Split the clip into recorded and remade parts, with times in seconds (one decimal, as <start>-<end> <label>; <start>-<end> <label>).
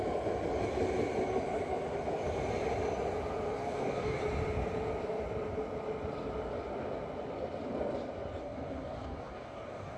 0.0-3.6 recorded; 3.6-4.2 remade; 4.2-8.4 recorded; 8.4-10.0 remade